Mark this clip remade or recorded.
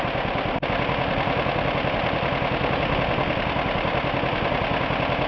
recorded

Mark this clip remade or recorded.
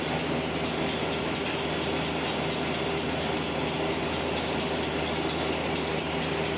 recorded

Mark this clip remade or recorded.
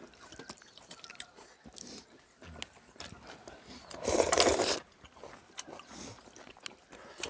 recorded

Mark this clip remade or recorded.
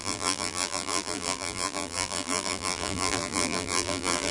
remade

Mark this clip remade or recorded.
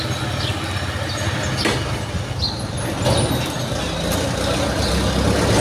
recorded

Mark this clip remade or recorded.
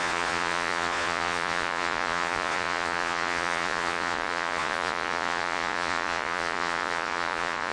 remade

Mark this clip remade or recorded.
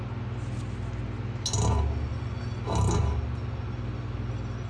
recorded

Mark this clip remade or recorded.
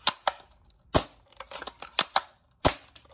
recorded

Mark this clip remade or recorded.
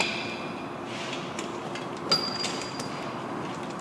recorded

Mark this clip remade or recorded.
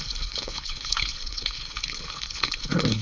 remade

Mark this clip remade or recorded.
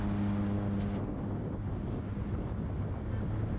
recorded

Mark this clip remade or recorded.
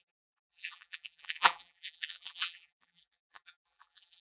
remade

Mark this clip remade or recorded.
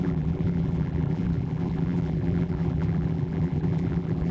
remade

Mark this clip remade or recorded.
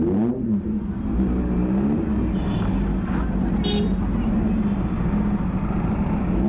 recorded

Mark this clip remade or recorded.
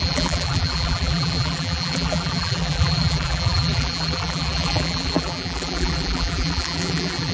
remade